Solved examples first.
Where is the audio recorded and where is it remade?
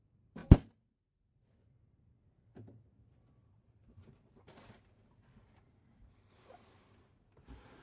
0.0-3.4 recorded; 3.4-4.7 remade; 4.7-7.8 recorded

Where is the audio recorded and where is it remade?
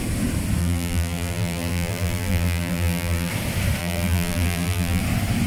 0.0-0.6 recorded; 0.6-3.3 remade; 3.3-3.8 recorded; 3.8-5.0 remade; 5.0-5.5 recorded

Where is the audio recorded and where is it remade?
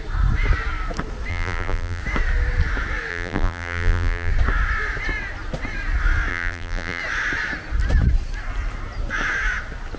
0.0-1.3 recorded; 1.3-2.0 remade; 2.0-3.1 recorded; 3.1-4.3 remade; 4.3-6.3 recorded; 6.3-7.0 remade; 7.0-10.0 recorded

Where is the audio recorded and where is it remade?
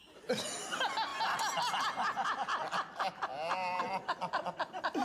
0.0-5.0 recorded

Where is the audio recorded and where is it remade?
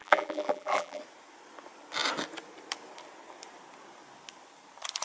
0.0-1.0 remade; 1.0-5.0 recorded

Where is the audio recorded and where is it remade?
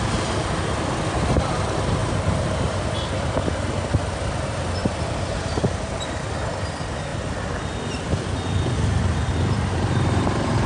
0.0-2.0 recorded; 2.0-3.3 remade; 3.3-4.8 recorded; 4.8-6.2 remade; 6.2-10.7 recorded